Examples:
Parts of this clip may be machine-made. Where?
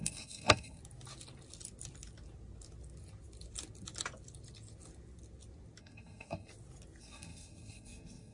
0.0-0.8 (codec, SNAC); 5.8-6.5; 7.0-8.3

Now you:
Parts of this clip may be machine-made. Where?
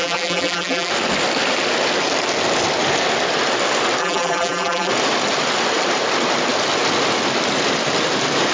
0.0-0.9 (vocoder, BigVGAN v2); 4.0-4.9